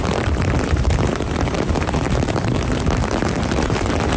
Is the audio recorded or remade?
remade